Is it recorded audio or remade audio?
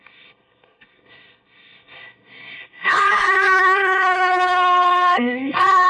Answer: remade